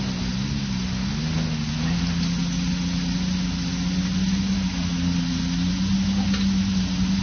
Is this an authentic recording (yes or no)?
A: yes